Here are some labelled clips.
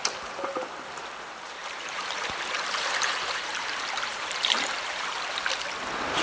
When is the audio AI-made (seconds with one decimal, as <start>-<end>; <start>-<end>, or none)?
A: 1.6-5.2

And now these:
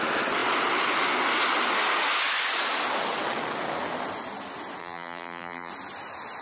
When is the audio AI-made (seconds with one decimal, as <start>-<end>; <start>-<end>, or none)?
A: 4.8-5.7

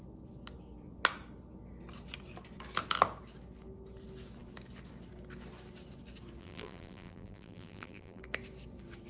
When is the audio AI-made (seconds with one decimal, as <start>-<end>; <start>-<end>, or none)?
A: 6.4-8.2

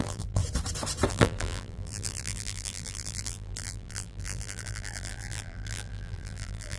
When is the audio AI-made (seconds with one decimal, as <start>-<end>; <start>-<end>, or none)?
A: 0.0-0.4; 1.1-6.8